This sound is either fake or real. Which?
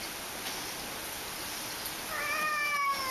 real